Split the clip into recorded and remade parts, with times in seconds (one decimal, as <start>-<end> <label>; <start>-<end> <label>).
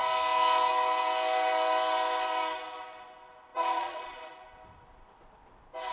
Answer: 0.0-3.5 recorded; 3.5-4.3 remade; 4.3-5.9 recorded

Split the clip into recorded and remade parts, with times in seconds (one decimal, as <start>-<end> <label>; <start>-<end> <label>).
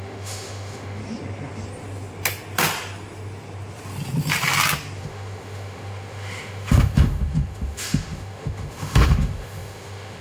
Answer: 0.0-1.0 remade; 1.0-5.0 recorded; 5.0-10.2 remade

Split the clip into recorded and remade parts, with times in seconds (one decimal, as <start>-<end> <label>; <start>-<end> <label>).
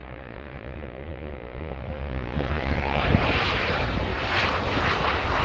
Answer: 0.0-3.0 remade; 3.0-5.4 recorded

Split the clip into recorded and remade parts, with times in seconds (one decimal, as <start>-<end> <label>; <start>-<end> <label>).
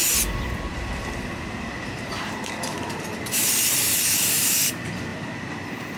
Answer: 0.0-0.7 recorded; 0.7-4.3 remade; 4.3-5.1 recorded; 5.1-6.0 remade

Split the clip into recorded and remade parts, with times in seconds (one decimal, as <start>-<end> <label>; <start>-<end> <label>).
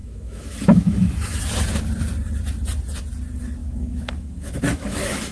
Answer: 0.0-1.5 remade; 1.5-3.6 recorded; 3.6-5.3 remade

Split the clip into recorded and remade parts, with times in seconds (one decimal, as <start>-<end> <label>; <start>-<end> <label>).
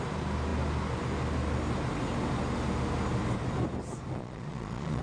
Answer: 0.0-4.1 recorded; 4.1-5.0 remade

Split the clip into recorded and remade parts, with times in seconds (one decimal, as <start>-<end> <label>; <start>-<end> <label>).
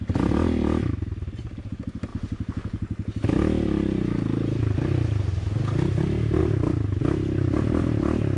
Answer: 0.0-8.4 recorded